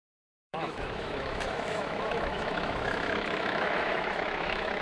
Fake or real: fake